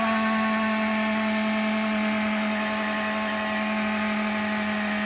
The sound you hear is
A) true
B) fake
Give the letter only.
A